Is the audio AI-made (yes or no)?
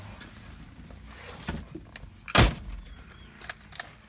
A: no